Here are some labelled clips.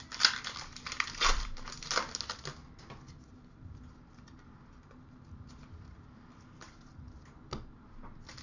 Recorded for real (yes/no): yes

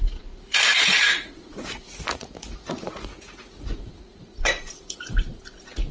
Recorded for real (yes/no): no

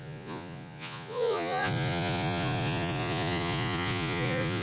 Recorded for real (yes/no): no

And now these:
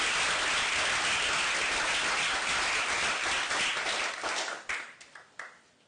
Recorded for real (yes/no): yes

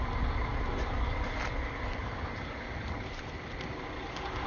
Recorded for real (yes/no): yes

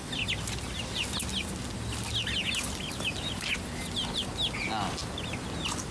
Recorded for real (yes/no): yes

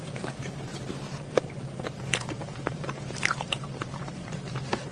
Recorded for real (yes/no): no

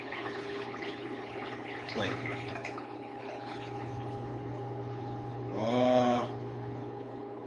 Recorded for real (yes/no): no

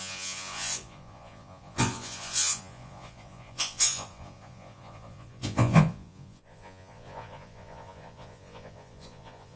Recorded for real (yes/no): no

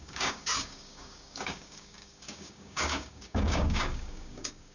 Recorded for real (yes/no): no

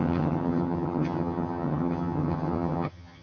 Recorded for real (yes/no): no